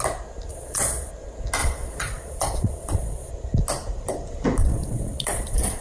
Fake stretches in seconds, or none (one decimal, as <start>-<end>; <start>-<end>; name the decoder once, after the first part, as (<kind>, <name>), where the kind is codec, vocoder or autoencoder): 0.5-1.1 (vocoder, Vocos); 1.6-3.3; 4.6-5.8